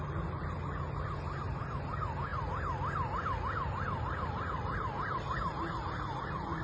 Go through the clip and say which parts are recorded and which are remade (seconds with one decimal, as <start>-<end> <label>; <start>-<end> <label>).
0.0-6.6 recorded